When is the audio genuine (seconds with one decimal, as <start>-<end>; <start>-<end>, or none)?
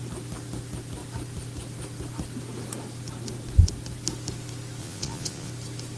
0.0-4.8; 5.5-6.0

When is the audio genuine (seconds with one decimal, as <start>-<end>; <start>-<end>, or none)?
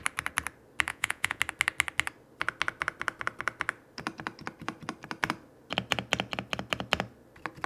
0.0-0.9; 1.4-7.7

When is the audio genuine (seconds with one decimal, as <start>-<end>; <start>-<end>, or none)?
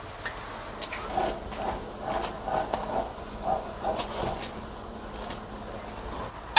0.0-3.1; 5.1-6.6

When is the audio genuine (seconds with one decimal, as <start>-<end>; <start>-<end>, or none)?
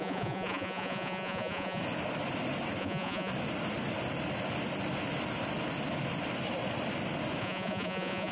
1.8-2.8; 3.3-7.4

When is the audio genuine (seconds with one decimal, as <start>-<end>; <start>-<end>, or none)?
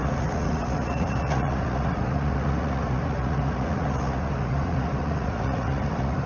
none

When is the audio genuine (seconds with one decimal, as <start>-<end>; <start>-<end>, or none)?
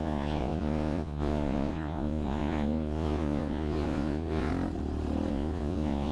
4.5-5.3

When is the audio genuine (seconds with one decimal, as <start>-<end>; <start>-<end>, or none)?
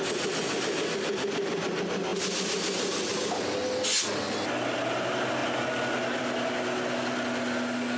0.0-8.0